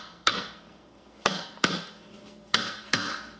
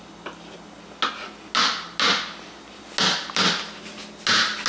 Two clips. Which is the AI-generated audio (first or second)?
first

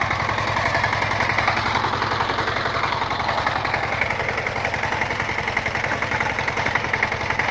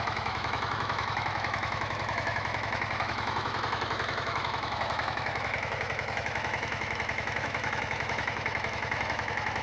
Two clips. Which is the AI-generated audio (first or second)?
second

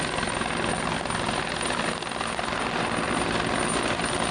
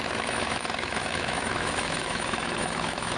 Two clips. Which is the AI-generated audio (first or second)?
second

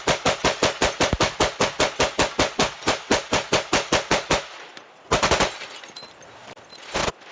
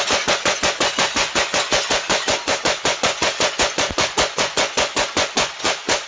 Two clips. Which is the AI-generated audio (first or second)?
second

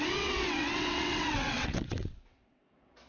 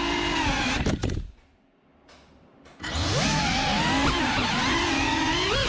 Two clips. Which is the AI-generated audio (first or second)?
first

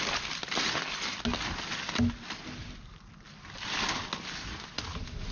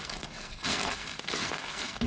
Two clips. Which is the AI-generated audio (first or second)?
second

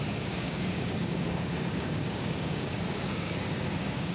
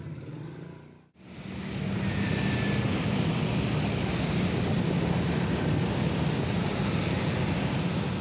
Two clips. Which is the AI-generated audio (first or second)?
first